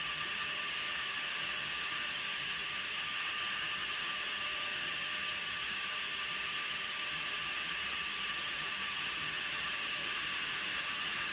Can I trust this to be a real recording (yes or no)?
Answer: no